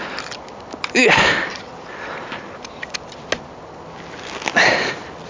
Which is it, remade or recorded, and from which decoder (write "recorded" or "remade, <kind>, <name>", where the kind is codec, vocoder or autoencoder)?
recorded